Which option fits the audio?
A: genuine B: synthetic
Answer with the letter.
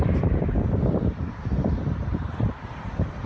B